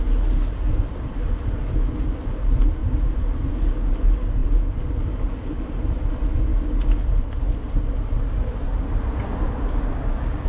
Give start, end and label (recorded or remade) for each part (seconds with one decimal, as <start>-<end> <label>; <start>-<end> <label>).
0.0-2.8 recorded; 2.8-3.5 remade; 3.5-10.5 recorded